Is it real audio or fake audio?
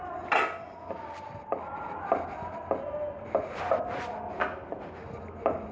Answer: real